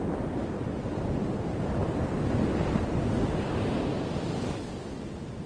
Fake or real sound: real